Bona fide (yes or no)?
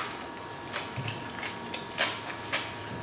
yes